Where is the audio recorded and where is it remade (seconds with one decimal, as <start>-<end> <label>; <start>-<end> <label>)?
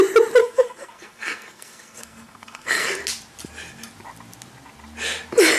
0.0-0.4 recorded; 0.4-3.0 remade; 3.0-5.6 recorded